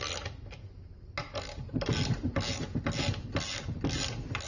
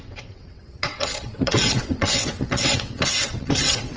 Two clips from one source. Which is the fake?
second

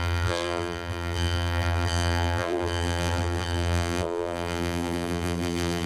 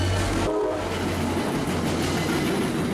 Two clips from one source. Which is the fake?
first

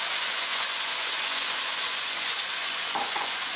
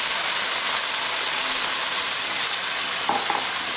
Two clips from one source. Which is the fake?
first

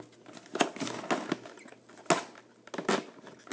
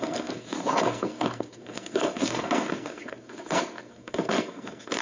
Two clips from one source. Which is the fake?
second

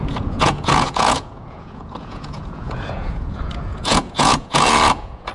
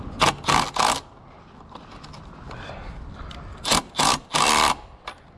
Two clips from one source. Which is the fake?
first